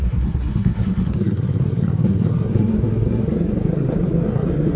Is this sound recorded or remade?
remade